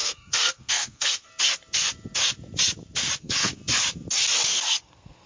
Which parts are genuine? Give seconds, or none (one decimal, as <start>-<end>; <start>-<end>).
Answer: 1.3-3.2; 3.6-4.8